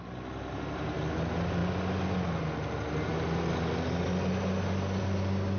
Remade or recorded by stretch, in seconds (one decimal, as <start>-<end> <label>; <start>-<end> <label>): 0.0-5.6 recorded